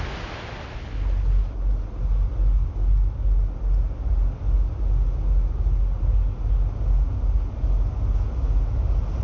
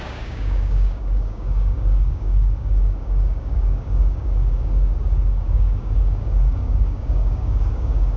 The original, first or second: first